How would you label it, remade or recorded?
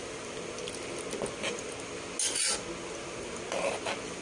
recorded